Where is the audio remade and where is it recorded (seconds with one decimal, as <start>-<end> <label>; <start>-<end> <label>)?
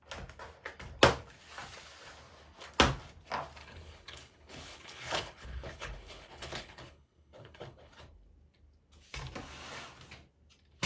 0.0-3.6 recorded; 3.6-8.0 remade; 8.0-10.9 recorded